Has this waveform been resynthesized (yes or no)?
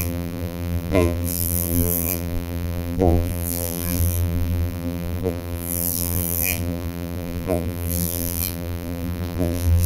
yes